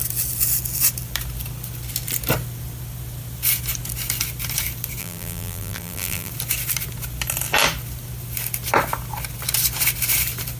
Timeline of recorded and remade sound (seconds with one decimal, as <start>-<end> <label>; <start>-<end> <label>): 0.0-5.0 recorded; 5.0-6.3 remade; 6.3-10.6 recorded